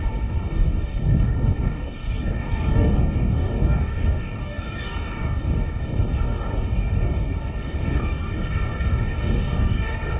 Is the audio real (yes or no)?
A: no